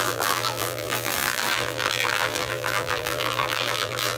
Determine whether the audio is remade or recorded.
remade